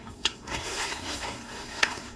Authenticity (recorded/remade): remade